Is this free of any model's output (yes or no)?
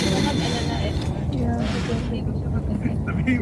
yes